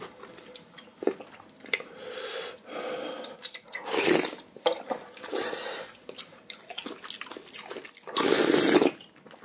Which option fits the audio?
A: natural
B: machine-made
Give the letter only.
A